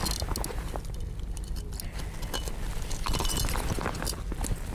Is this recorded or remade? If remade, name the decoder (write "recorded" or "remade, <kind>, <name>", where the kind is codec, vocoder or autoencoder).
recorded